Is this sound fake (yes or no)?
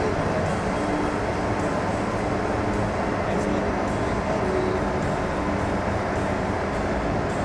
no